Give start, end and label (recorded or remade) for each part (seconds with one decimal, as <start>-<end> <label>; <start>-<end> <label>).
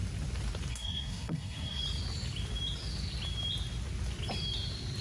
0.0-0.7 recorded; 0.7-1.8 remade; 1.8-5.0 recorded